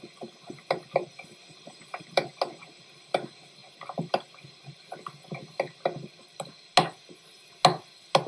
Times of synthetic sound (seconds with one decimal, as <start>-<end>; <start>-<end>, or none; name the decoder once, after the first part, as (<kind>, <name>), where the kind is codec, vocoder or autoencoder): 1.4-2.4 (vocoder, BigVGAN v2)